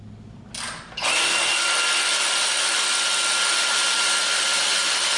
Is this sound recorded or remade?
recorded